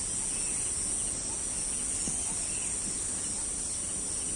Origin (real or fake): real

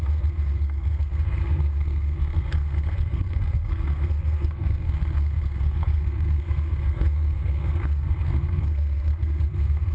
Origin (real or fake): fake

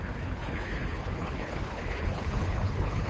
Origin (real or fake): fake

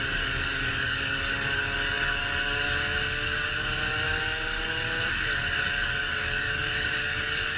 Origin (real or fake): fake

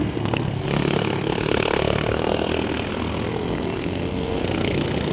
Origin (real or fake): fake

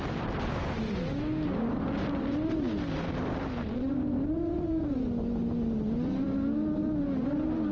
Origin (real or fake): real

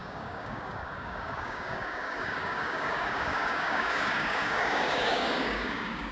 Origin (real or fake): fake